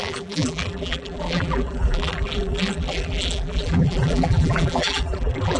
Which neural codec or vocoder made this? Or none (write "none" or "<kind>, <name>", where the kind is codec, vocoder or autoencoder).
vocoder, BigVGAN v2